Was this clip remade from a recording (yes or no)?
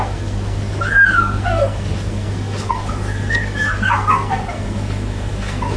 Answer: yes